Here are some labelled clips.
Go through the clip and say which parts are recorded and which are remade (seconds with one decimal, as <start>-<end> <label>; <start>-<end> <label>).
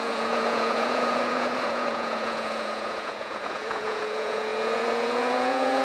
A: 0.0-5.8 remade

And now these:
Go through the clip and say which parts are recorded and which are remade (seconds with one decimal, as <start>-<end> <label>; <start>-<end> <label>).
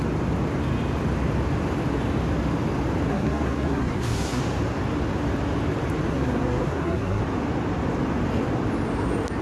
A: 0.0-3.1 recorded; 3.1-4.4 remade; 4.4-6.1 recorded; 6.1-7.2 remade; 7.2-9.4 recorded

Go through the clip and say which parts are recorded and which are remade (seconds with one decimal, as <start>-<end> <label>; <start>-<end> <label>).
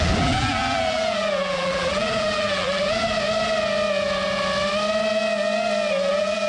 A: 0.0-3.0 remade; 3.0-6.1 recorded; 6.1-6.5 remade